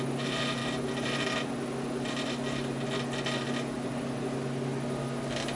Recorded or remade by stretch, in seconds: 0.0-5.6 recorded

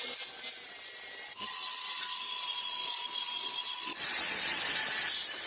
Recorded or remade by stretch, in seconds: 0.0-1.3 recorded; 1.3-4.6 remade; 4.6-5.5 recorded

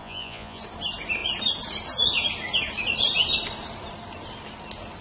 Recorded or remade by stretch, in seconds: 0.0-0.6 remade; 0.6-5.0 recorded

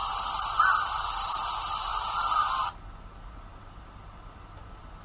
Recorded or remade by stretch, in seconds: 0.0-5.0 recorded

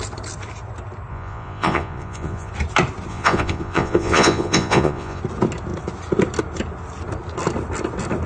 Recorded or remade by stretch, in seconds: 0.0-1.1 recorded; 1.1-2.5 remade; 2.5-3.1 recorded; 3.1-5.2 remade; 5.2-8.3 recorded

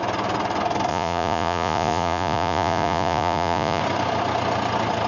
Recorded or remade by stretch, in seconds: 0.0-0.9 recorded; 0.9-3.8 remade; 3.8-5.1 recorded

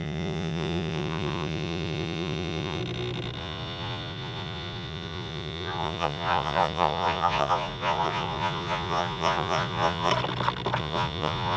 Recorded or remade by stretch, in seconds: 0.0-2.8 remade; 2.8-3.4 recorded; 3.4-10.1 remade; 10.1-10.8 recorded; 10.8-11.6 remade

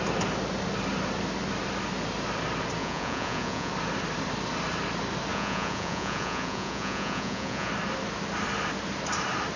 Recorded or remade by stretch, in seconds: 0.0-2.8 recorded; 2.8-3.7 remade; 3.7-5.3 recorded; 5.3-7.7 remade; 7.7-9.6 recorded